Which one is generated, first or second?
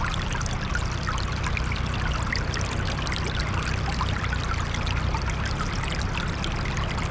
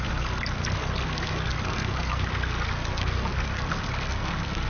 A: second